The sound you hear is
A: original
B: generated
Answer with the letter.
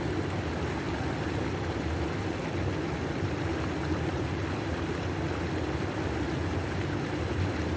A